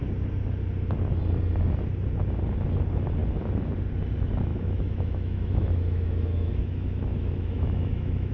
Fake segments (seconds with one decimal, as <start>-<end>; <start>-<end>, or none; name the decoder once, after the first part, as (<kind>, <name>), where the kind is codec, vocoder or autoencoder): 4.5-8.3 (autoencoder, DAC-VAE)